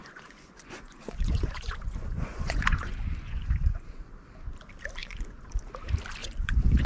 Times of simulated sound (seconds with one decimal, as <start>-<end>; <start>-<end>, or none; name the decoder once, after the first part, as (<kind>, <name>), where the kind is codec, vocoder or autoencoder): 0.0-4.1 (vocoder, Vocos); 5.0-5.6; 6.2-6.9